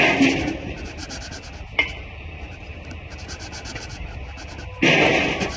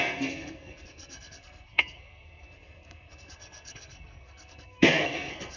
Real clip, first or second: first